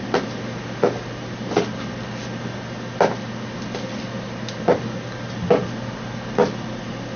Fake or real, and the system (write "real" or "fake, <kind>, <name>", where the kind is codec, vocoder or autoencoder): real